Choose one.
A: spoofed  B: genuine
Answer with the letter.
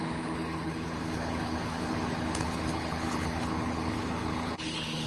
A